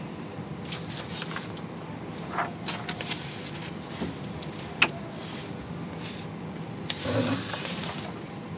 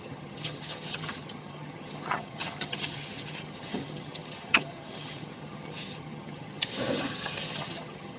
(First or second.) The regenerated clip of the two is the second